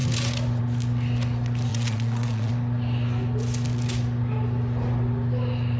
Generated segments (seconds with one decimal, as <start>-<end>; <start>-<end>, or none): 1.7-2.5